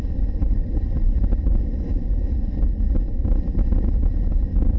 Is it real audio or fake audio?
real